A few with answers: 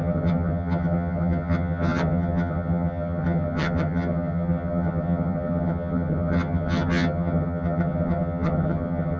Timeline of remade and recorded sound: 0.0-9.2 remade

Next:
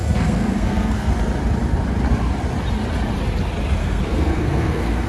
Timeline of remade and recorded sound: 0.0-1.1 remade; 1.1-3.8 recorded; 3.8-5.1 remade

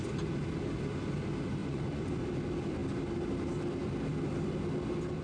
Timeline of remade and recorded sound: 0.0-1.6 recorded; 1.6-2.2 remade; 2.2-5.2 recorded

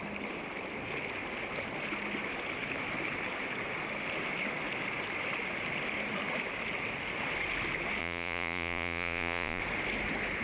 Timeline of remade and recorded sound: 0.0-8.0 recorded; 8.0-9.6 remade; 9.6-10.4 recorded

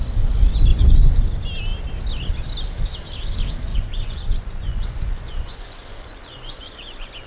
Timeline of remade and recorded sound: 0.0-0.7 recorded; 0.7-1.2 remade; 1.2-3.7 recorded; 3.7-7.3 remade

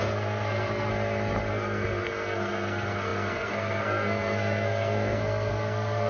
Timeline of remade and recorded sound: 0.0-0.9 remade; 0.9-1.5 recorded; 1.5-6.1 remade